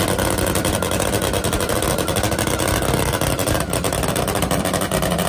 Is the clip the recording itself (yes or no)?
yes